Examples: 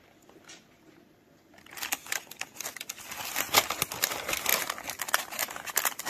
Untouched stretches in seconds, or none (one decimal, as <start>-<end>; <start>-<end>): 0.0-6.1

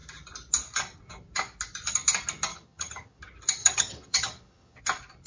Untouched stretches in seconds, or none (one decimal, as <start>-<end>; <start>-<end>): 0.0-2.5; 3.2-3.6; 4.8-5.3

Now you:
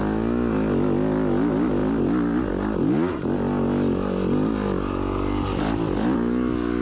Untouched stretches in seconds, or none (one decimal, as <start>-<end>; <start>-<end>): 0.0-6.8

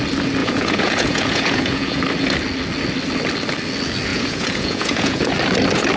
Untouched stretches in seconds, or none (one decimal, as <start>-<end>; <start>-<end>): 0.0-0.4; 2.0-4.1; 5.3-6.0

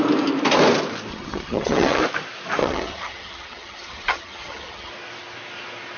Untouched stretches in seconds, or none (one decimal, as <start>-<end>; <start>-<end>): 0.0-1.1; 2.0-2.6; 4.9-6.0